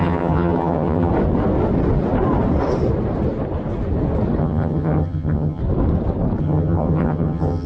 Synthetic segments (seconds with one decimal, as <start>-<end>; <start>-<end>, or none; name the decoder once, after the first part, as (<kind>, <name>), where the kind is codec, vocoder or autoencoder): 0.0-1.1 (vocoder, HiFi-GAN); 4.4-5.6; 6.4-7.7